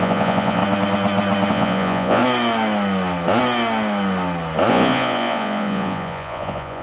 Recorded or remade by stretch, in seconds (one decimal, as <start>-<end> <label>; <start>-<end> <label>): 0.0-0.6 remade; 0.6-1.5 recorded; 1.5-2.2 remade; 2.2-4.7 recorded; 4.7-6.8 remade